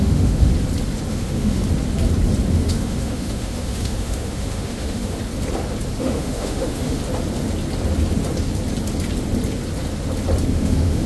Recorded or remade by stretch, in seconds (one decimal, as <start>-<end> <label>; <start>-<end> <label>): 0.0-0.5 remade; 0.5-1.1 recorded; 1.1-1.6 remade; 1.6-2.5 recorded; 2.5-5.2 remade; 5.2-6.0 recorded; 6.0-7.0 remade; 7.0-10.5 recorded; 10.5-11.1 remade